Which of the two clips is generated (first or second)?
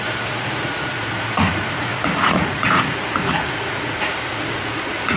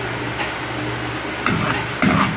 first